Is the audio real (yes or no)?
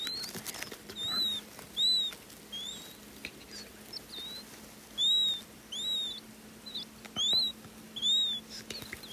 yes